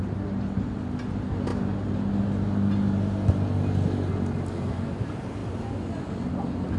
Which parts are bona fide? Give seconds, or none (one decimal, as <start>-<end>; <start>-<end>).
0.0-6.8